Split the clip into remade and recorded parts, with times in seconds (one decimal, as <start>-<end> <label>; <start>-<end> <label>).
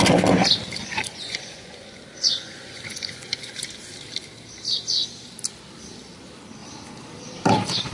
0.0-0.8 recorded; 0.8-2.0 remade; 2.0-2.4 recorded; 2.4-3.5 remade; 3.5-7.9 recorded